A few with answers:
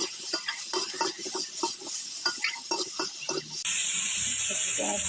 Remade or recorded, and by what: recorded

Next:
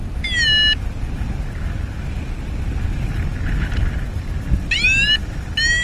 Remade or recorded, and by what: recorded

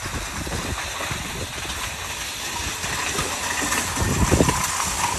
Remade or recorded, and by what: recorded